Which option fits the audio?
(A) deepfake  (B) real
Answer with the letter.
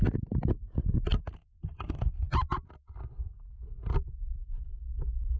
B